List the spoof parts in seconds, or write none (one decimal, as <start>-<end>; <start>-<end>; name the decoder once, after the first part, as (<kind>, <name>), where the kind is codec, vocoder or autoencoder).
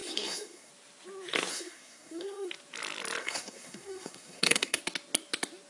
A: 0.0-0.7 (codec, SNAC); 1.5-2.5; 3.2-4.8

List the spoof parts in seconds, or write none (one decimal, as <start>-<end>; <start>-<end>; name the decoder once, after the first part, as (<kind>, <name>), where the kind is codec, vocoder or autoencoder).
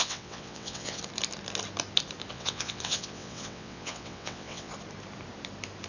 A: 0.0-1.0 (vocoder, WaveNeXt); 2.3-4.7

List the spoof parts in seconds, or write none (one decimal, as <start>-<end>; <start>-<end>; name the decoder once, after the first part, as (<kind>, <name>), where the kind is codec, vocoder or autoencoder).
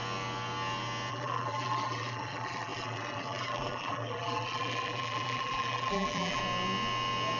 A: 1.1-6.4 (vocoder, BigVGAN v2)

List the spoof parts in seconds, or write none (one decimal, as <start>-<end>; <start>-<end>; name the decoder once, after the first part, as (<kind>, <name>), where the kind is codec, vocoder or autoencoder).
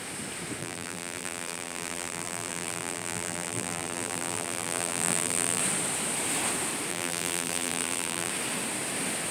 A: 0.6-5.6 (vocoder, BigVGAN v2); 6.9-8.3